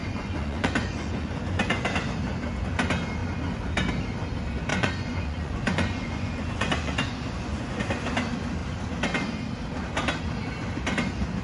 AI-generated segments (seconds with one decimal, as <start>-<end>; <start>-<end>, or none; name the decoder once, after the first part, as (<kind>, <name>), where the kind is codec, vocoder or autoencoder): 0.0-1.8 (vocoder, Vocos); 4.7-7.8